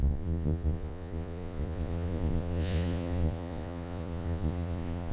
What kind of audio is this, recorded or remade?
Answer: remade